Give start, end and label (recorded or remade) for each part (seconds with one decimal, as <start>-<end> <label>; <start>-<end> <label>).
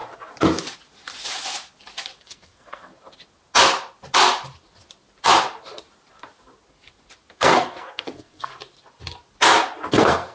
0.0-2.2 recorded; 2.2-2.9 remade; 2.9-7.3 recorded; 7.3-8.5 remade; 8.5-9.9 recorded; 9.9-10.3 remade